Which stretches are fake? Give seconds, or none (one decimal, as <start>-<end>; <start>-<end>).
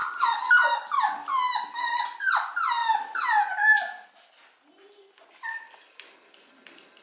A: none